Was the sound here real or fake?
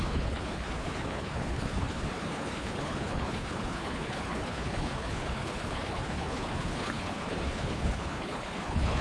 fake